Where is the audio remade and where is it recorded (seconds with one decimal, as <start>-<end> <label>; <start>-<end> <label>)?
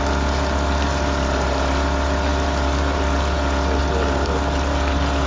0.0-5.3 recorded